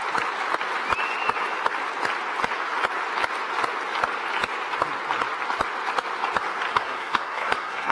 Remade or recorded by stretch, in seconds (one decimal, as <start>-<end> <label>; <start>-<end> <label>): 0.0-6.7 recorded; 6.7-7.9 remade